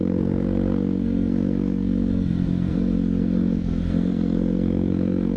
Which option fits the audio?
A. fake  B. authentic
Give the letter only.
A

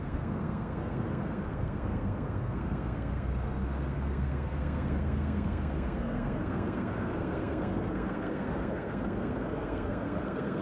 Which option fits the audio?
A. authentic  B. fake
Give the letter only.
B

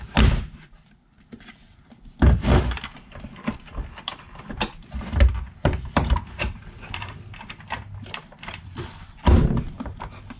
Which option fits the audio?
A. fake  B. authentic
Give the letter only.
A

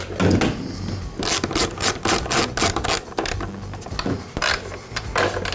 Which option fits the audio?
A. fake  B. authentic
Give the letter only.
B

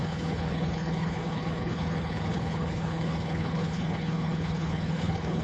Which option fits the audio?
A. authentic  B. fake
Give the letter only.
B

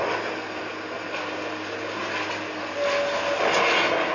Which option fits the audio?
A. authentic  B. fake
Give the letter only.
A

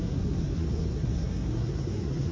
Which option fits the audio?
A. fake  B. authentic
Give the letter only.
A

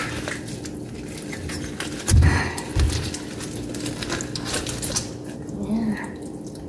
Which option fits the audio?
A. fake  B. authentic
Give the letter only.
B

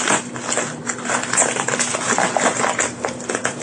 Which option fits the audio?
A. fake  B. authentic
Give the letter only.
B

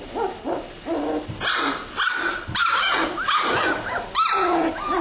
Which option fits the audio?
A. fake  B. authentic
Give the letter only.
B